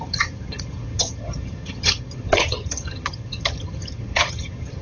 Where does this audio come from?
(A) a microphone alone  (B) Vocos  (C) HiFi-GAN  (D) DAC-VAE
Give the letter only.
C